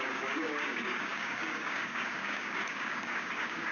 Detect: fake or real fake